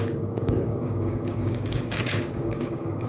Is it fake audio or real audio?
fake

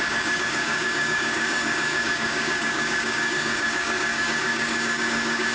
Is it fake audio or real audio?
fake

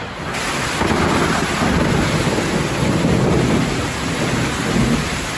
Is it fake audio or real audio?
real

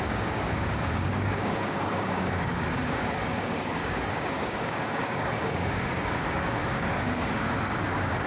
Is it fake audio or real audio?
fake